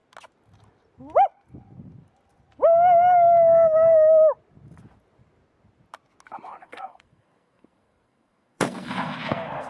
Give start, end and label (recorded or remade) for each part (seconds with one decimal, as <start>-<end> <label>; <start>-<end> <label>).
0.0-6.6 recorded; 6.6-9.7 remade